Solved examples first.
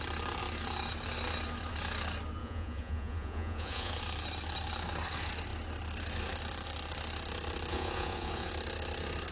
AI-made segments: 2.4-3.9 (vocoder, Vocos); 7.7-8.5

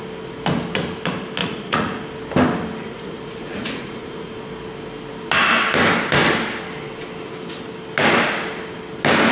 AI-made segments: 1.4-2.0 (vocoder, Vocos); 2.8-4.3

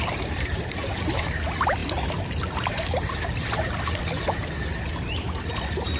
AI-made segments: 0.0-1.2 (vocoder, BigVGAN v2); 1.8-4.0

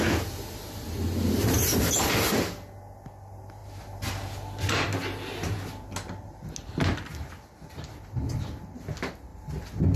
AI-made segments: 9.3-10.0 (vocoder, BigVGAN v2)

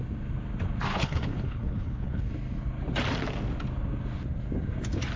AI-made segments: 0.9-2.3 (codec, HILCodec)